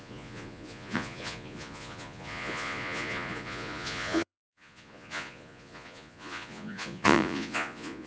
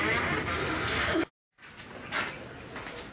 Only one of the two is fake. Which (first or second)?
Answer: first